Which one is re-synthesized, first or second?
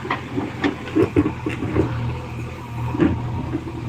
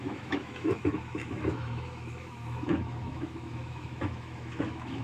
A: second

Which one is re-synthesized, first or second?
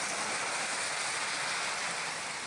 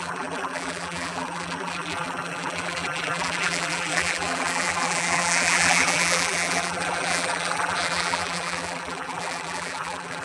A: second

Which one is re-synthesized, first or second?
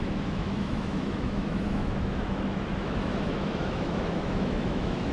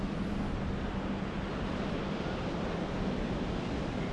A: first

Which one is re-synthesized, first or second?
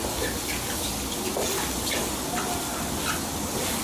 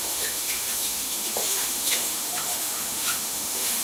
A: second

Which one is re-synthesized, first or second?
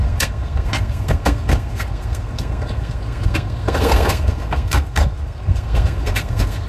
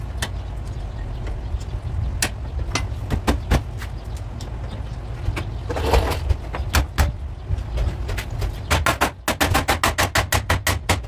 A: first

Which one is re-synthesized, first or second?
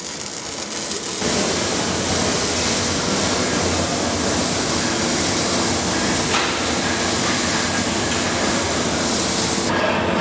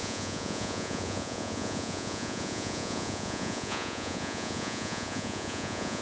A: second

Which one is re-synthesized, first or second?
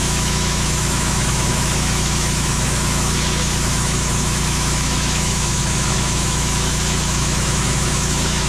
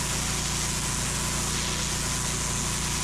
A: first